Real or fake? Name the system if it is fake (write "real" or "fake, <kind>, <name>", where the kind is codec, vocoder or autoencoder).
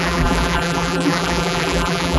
fake, vocoder, BigVGAN v2